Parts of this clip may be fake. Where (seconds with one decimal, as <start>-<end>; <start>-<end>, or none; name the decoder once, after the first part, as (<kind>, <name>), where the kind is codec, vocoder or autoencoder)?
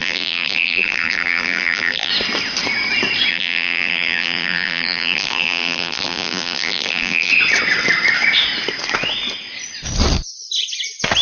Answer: 0.0-2.1 (vocoder, BigVGAN v2); 3.3-7.3